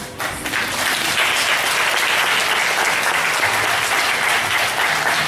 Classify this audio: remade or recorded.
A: recorded